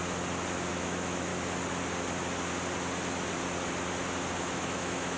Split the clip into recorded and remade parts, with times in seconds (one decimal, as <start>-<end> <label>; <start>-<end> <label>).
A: 0.0-0.7 recorded; 0.7-1.3 remade; 1.3-4.4 recorded; 4.4-5.2 remade